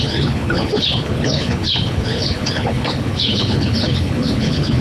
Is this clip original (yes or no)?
no